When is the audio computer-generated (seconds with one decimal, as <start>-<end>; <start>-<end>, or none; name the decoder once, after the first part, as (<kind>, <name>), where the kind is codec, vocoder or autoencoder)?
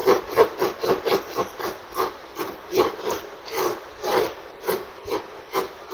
0.0-0.6 (vocoder, BigVGAN v2); 2.3-5.9